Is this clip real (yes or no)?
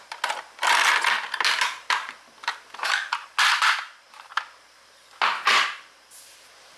yes